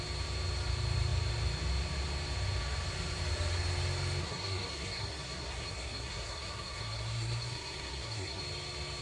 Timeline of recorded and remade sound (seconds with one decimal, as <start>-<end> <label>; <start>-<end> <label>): 0.0-4.2 recorded; 4.2-8.4 remade; 8.4-9.0 recorded